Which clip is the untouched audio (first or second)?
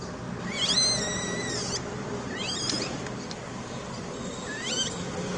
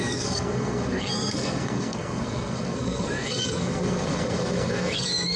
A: first